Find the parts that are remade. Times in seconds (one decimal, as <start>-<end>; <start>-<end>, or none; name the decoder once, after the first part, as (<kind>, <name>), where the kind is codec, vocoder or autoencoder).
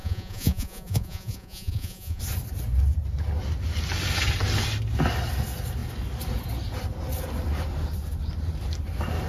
0.0-2.2 (vocoder, Vocos)